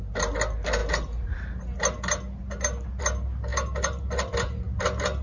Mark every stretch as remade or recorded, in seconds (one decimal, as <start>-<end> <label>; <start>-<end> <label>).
0.0-5.2 recorded